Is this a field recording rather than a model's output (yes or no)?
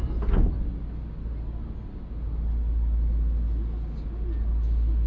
yes